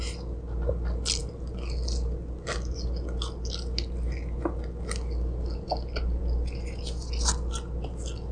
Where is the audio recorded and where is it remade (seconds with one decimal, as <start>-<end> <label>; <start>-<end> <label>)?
0.0-8.3 recorded